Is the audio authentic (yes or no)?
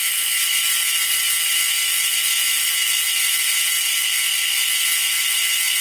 yes